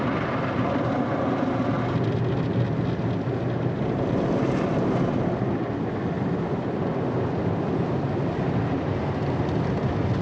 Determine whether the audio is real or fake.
real